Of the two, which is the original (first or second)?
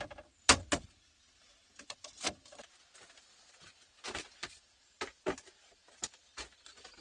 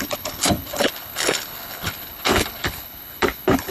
first